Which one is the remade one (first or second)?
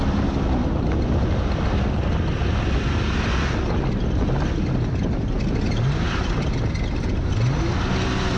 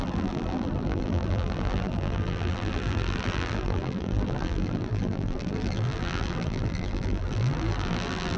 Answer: second